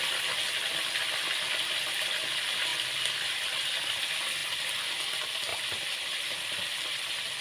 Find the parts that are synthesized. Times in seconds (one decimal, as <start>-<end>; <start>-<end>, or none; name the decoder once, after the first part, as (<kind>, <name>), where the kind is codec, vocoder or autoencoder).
0.0-7.4 (vocoder, BigVGAN v2)